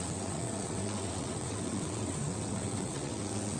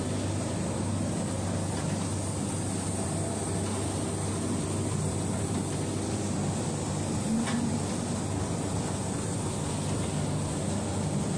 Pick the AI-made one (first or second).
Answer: first